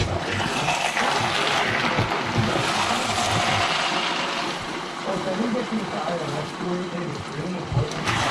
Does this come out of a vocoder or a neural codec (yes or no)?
yes